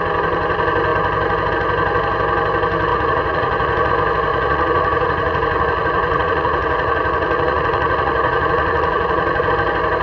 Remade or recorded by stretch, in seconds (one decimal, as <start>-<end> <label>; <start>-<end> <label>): 0.0-2.9 recorded; 2.9-3.9 remade; 3.9-4.3 recorded; 4.3-9.5 remade; 9.5-10.0 recorded